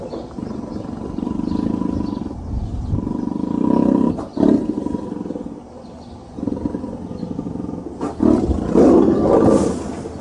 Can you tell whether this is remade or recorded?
recorded